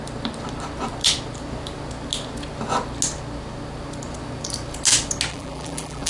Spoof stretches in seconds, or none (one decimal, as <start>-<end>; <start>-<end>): 5.3-6.1

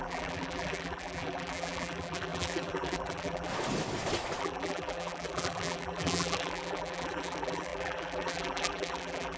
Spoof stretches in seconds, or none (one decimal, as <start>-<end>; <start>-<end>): 0.0-3.5; 4.4-9.4

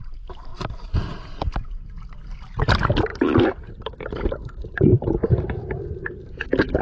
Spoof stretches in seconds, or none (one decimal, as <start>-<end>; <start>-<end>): 0.5-1.2; 3.1-5.6

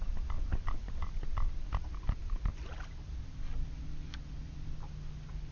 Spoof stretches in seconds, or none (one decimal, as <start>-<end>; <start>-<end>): none

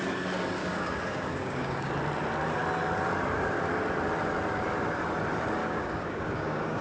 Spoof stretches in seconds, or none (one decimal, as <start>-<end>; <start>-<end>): 0.6-1.9; 5.6-6.8

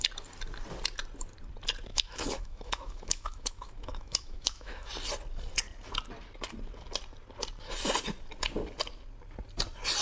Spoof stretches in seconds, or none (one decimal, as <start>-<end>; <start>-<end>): 1.9-4.9